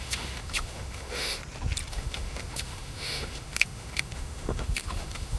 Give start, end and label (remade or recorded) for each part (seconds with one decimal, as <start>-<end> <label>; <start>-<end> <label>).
0.0-1.4 remade; 1.4-1.9 recorded; 1.9-5.4 remade